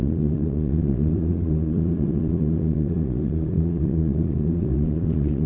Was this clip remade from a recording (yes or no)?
yes